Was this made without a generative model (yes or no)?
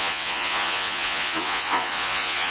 no